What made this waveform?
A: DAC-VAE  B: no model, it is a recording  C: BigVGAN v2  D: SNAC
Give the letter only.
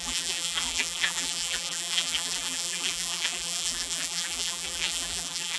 C